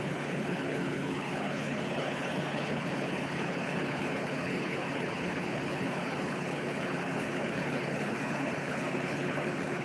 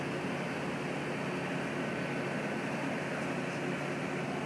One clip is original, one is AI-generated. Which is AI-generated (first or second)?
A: first